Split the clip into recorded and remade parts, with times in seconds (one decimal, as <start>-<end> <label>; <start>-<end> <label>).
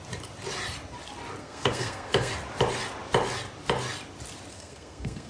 0.0-1.4 recorded; 1.4-2.3 remade; 2.3-4.5 recorded; 4.5-5.3 remade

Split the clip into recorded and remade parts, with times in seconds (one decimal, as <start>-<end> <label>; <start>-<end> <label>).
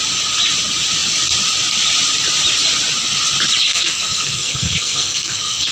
0.0-3.7 recorded; 3.7-5.7 remade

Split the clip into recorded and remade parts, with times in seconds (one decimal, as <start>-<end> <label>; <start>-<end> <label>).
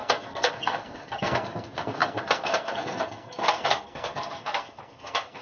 0.0-5.4 remade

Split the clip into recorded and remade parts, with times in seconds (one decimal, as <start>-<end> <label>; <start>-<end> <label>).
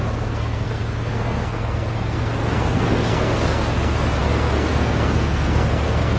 0.0-6.2 remade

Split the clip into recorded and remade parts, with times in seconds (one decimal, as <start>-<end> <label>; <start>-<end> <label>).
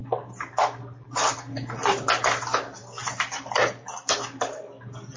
0.0-5.2 recorded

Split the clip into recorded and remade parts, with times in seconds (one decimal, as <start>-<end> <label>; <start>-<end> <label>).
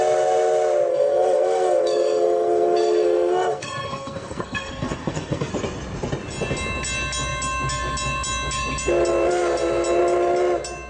0.0-0.9 recorded; 0.9-5.5 remade; 5.5-10.9 recorded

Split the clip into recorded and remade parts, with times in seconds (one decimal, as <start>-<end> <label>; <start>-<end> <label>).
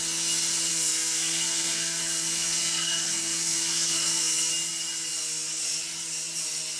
0.0-0.7 recorded; 0.7-4.5 remade; 4.5-6.8 recorded